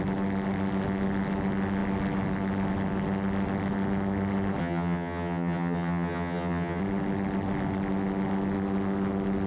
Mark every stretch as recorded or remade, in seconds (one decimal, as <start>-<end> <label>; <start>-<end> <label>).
0.0-4.6 recorded; 4.6-6.8 remade; 6.8-9.5 recorded